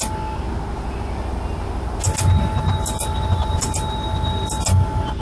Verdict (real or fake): real